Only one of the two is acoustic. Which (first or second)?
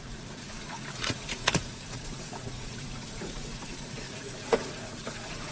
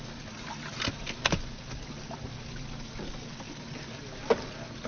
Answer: second